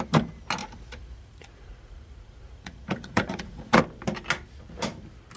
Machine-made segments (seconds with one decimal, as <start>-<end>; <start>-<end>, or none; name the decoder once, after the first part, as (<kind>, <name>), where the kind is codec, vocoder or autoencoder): 0.6-3.8 (vocoder, Vocos)